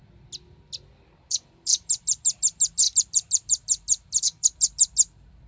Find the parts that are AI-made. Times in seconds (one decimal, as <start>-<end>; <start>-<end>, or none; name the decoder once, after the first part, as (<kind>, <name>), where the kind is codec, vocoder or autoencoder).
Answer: 1.3-5.5 (vocoder, BigVGAN v2)